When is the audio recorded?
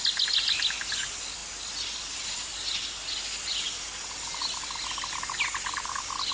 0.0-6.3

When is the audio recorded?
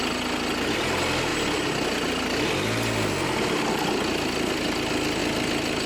0.0-5.9